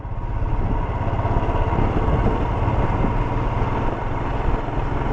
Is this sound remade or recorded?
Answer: recorded